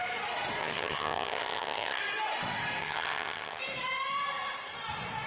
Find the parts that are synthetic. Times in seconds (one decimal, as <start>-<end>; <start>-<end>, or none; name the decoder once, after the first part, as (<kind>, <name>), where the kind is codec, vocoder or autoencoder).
0.6-2.0 (vocoder, HiFi-GAN); 2.8-3.6